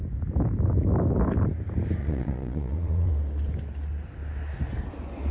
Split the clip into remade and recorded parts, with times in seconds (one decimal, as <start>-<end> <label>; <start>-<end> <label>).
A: 0.0-2.0 recorded; 2.0-3.1 remade; 3.1-5.3 recorded